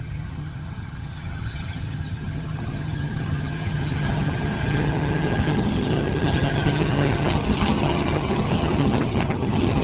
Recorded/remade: remade